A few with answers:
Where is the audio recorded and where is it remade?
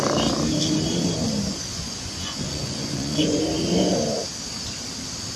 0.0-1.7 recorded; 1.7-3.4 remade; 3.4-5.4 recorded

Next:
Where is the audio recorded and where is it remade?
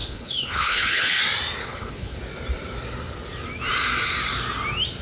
0.0-1.2 remade; 1.2-1.6 recorded; 1.6-2.2 remade; 2.2-5.0 recorded